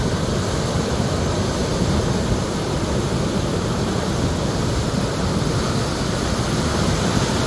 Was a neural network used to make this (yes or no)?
no